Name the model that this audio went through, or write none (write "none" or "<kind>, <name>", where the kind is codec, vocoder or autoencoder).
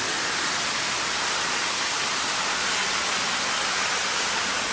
none